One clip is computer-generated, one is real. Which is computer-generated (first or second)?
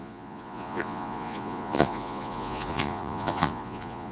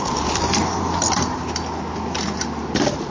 first